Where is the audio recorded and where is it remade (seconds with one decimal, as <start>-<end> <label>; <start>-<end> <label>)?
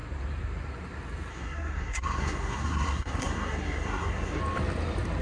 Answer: 0.0-1.3 recorded; 1.3-4.4 remade; 4.4-5.2 recorded